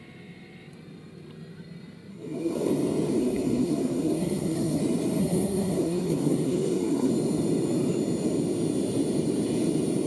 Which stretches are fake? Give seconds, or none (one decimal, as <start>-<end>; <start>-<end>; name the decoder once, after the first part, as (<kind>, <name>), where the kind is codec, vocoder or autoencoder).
2.1-2.7 (codec, SNAC); 3.2-4.8; 5.2-7.1